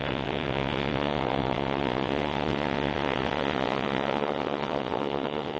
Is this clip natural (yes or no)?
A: no